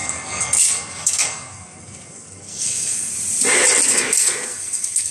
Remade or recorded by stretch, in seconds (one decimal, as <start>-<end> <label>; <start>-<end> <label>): 0.0-3.1 remade; 3.1-3.9 recorded; 3.9-5.1 remade